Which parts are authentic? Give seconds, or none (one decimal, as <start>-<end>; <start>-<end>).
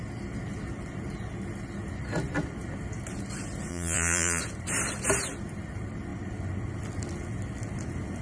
0.0-3.7; 4.4-8.2